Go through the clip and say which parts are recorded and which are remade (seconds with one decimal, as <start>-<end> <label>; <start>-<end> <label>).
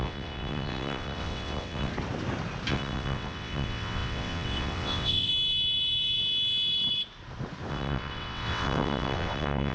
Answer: 0.0-1.9 remade; 1.9-2.7 recorded; 2.7-5.3 remade; 5.3-7.7 recorded; 7.7-9.7 remade